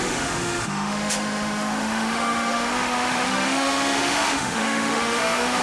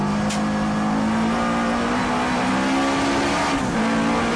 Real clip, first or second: second